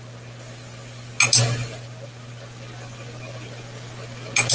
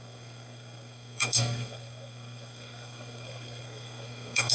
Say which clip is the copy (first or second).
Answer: second